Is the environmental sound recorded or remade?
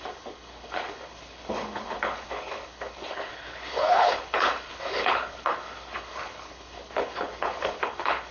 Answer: remade